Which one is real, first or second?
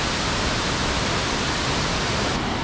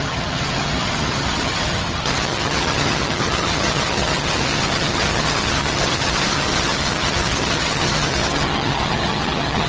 first